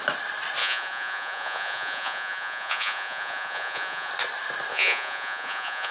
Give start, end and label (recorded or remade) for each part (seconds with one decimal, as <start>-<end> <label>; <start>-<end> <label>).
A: 0.0-0.6 recorded; 0.6-4.1 remade; 4.1-4.7 recorded; 4.7-5.9 remade

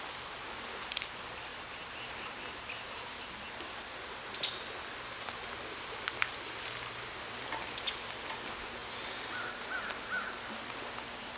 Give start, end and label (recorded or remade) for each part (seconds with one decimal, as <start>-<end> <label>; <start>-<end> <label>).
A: 0.0-11.4 recorded